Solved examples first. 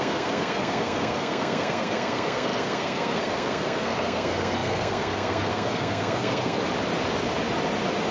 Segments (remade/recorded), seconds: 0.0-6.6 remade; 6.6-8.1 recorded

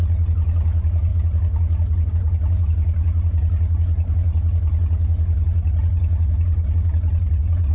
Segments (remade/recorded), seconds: 0.0-7.7 recorded

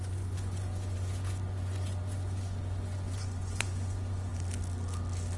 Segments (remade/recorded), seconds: 0.0-4.3 remade; 4.3-5.4 recorded

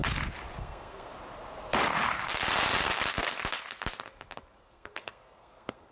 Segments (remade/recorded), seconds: 0.0-0.6 recorded; 0.6-1.1 remade; 1.1-4.6 recorded; 4.6-5.9 remade